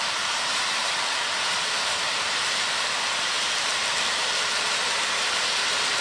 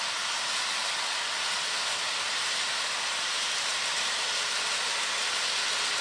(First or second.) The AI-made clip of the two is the first